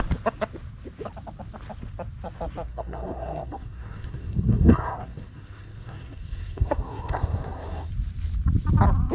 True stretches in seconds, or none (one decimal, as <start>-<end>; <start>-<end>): 0.0-2.7; 7.9-9.1